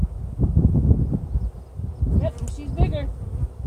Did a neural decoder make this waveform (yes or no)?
no